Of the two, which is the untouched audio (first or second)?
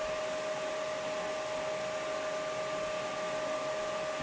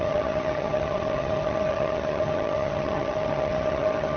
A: first